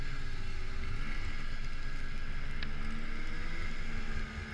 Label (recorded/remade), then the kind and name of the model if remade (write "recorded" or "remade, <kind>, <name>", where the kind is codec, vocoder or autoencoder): recorded